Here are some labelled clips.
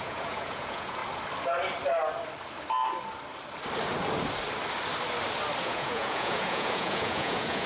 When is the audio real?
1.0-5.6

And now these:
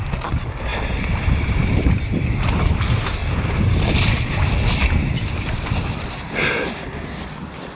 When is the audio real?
0.0-7.7